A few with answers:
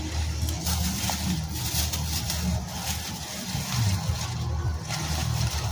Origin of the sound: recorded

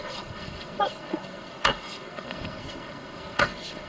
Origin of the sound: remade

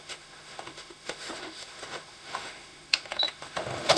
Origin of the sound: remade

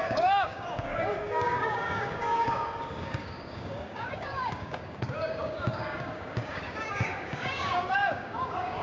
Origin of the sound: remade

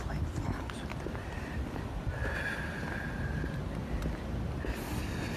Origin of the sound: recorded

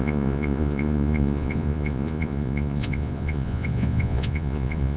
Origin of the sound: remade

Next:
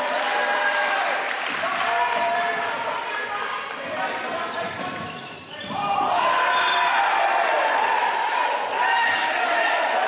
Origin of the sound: remade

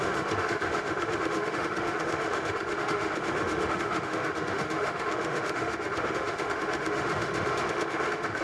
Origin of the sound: remade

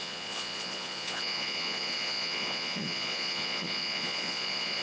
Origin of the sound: remade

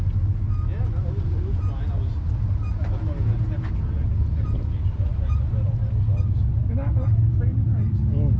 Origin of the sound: recorded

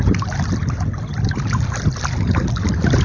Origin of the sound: recorded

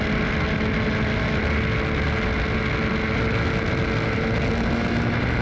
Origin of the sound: recorded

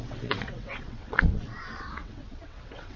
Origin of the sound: remade